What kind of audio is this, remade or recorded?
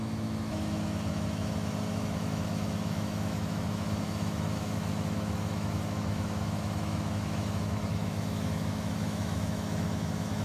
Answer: remade